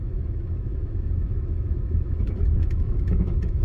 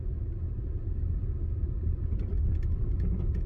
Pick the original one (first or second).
second